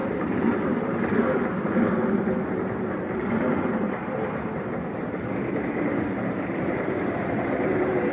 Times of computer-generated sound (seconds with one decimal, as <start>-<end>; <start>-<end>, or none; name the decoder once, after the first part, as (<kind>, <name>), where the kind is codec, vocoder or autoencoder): 4.7-8.1 (vocoder, BigVGAN v2)